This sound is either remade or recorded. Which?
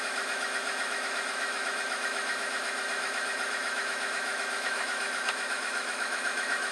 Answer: remade